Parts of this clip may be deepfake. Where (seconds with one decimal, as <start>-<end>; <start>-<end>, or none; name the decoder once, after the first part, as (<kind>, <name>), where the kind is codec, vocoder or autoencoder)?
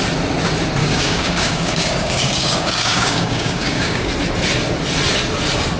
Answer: 0.8-4.1 (codec, DAC)